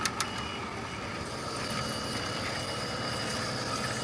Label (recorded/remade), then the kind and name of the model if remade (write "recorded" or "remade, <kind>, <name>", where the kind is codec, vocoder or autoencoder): recorded